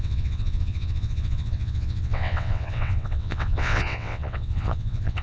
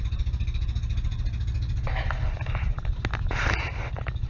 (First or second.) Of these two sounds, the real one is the second